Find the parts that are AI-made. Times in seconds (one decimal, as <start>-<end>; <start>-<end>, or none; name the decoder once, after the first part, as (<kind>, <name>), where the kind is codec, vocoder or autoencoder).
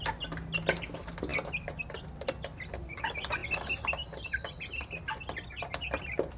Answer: none